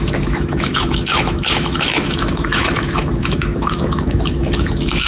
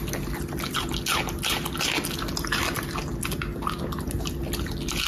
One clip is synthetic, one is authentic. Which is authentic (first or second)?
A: second